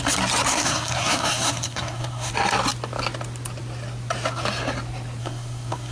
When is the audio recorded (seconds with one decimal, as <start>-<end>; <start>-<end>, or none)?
0.0-0.5; 2.3-5.2

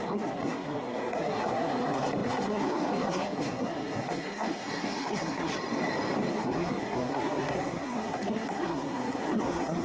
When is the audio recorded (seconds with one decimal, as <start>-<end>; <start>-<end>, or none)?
5.5-6.3